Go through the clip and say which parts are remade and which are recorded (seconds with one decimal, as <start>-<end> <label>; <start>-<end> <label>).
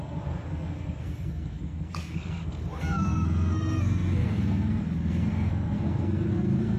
0.0-6.8 remade